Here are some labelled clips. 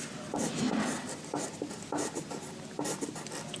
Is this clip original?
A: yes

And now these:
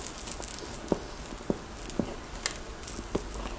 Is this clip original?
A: yes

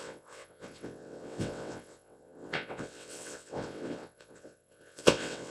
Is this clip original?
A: no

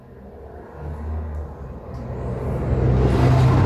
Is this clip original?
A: yes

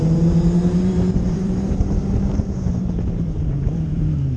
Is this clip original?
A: no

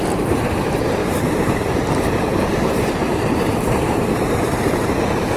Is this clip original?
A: no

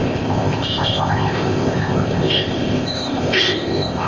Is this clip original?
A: no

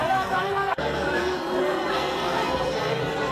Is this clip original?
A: no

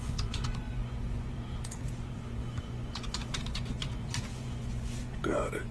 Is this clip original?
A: no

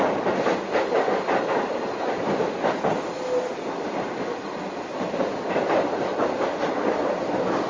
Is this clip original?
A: yes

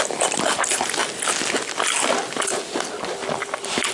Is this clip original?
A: yes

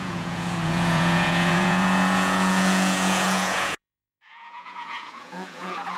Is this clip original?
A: no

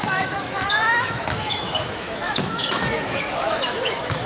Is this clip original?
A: no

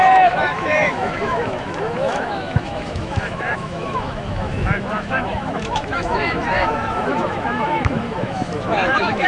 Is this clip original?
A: no